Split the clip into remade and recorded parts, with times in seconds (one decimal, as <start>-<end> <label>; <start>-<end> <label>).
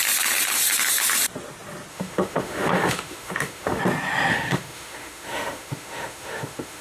0.0-1.9 recorded; 1.9-3.8 remade; 3.8-4.3 recorded; 4.3-6.8 remade